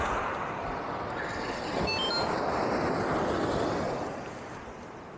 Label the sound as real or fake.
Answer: real